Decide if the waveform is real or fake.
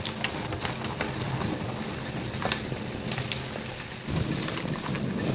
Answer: real